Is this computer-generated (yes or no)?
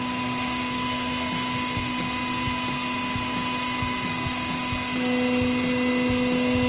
no